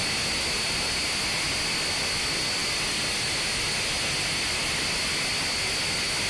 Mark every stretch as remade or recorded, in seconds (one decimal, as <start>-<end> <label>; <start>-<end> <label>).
0.0-6.3 recorded